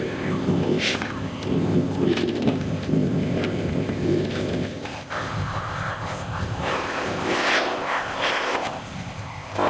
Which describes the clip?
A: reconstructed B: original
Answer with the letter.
A